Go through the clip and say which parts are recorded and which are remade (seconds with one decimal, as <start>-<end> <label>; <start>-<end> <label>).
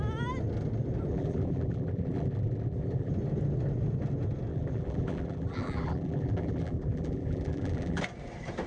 0.0-1.1 recorded; 1.1-3.1 remade; 3.1-4.5 recorded; 4.5-8.0 remade; 8.0-8.7 recorded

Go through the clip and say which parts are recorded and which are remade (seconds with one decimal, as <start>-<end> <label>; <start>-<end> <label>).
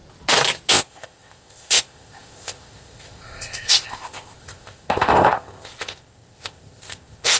0.0-0.7 recorded; 0.7-7.4 remade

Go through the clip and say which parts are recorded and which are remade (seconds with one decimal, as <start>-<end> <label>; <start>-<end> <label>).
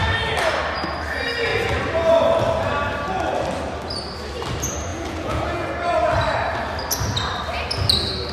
0.0-4.9 recorded; 4.9-5.7 remade; 5.7-8.3 recorded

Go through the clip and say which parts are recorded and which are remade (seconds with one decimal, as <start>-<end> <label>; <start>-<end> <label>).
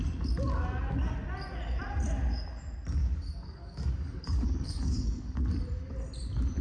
0.0-3.0 recorded; 3.0-5.4 remade; 5.4-6.6 recorded